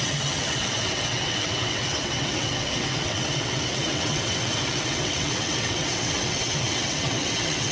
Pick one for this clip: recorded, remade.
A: remade